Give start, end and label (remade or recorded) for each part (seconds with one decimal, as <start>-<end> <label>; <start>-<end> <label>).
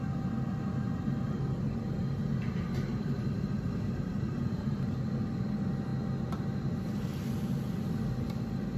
0.0-0.5 recorded; 0.5-4.9 remade; 4.9-8.8 recorded